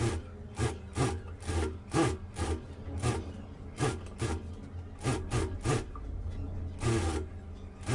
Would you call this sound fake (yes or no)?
no